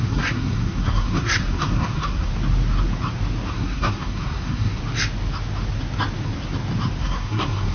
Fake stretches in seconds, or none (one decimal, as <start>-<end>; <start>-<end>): 0.0-2.3; 3.5-4.8; 7.0-7.7

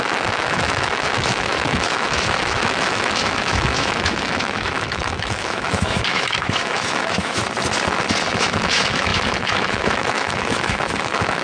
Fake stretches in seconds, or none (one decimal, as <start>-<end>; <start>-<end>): 0.0-7.4; 8.3-11.4

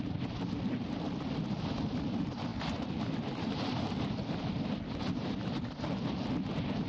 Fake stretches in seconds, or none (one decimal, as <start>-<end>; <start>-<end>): none

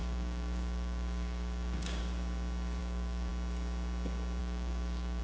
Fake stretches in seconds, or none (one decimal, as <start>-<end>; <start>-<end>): 0.0-2.0; 2.8-3.3; 4.4-5.2

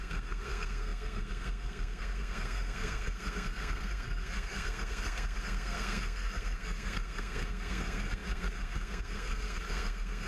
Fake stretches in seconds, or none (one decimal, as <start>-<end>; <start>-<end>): 0.0-10.3

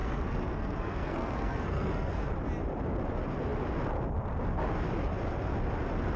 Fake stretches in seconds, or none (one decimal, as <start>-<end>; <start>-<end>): 0.0-2.1